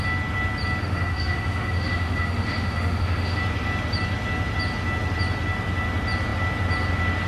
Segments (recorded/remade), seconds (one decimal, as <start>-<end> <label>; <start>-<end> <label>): 0.0-0.8 recorded; 0.8-3.4 remade; 3.4-7.3 recorded